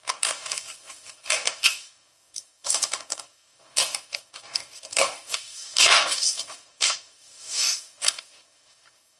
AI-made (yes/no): yes